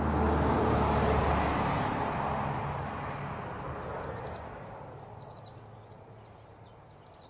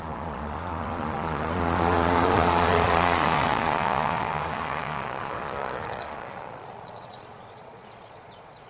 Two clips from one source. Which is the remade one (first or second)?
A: second